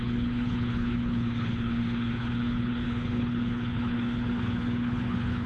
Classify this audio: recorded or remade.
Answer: remade